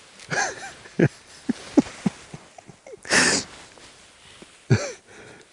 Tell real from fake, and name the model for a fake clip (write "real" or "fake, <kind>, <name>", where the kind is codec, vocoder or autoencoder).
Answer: real